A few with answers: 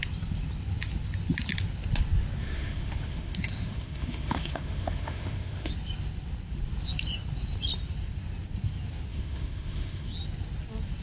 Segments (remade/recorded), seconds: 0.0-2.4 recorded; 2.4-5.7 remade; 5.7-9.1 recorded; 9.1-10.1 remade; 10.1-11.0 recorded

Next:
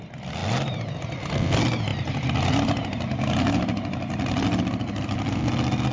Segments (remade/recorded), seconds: 0.0-0.4 recorded; 0.4-1.0 remade; 1.0-1.9 recorded; 1.9-5.4 remade; 5.4-5.9 recorded

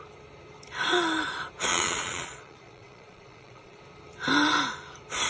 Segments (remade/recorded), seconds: 0.0-1.7 recorded; 1.7-3.8 remade; 3.8-5.3 recorded

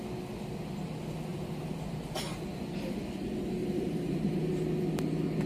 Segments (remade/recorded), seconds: 0.0-1.3 recorded; 1.3-2.4 remade; 2.4-3.6 recorded; 3.6-4.5 remade; 4.5-5.5 recorded

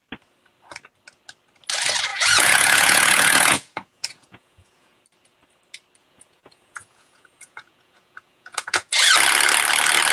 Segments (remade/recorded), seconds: 0.0-2.1 recorded; 2.1-5.0 remade; 5.0-6.0 recorded; 6.0-9.1 remade; 9.1-10.1 recorded